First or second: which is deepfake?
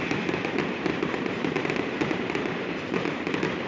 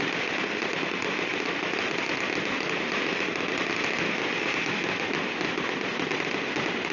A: first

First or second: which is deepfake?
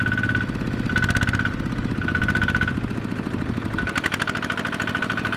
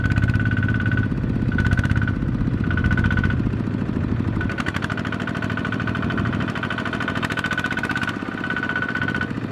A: second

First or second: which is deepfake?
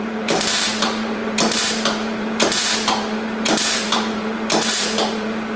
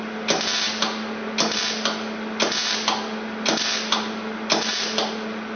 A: first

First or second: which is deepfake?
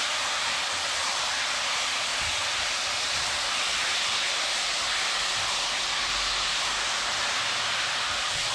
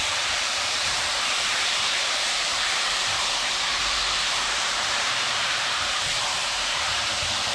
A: second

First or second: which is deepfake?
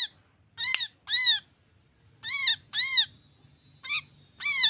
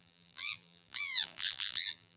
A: second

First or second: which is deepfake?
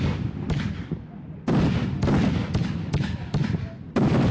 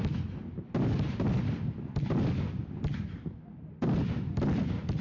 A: first